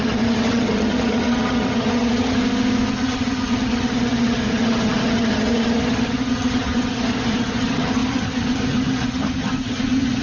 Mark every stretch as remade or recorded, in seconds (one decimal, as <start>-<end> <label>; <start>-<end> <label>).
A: 0.0-2.4 remade; 2.4-2.9 recorded; 2.9-10.2 remade